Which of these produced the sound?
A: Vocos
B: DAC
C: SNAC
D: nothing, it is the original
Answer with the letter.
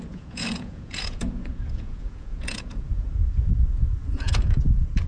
A